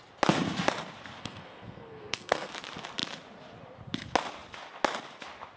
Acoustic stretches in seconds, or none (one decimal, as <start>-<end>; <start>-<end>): 0.0-1.2; 2.5-5.6